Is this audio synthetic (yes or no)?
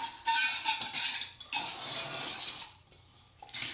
no